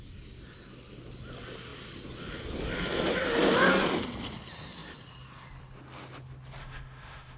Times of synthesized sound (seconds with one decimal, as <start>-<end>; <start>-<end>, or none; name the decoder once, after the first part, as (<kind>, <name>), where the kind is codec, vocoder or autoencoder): 6.6-7.4 (autoencoder, DAC-VAE)